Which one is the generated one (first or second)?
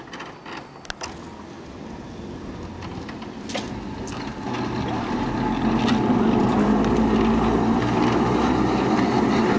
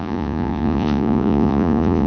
second